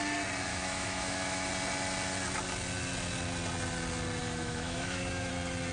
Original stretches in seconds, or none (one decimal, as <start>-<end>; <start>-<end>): 0.0-0.5; 1.5-4.2; 5.3-5.7